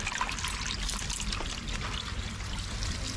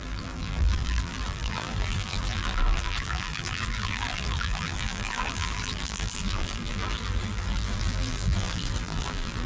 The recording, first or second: first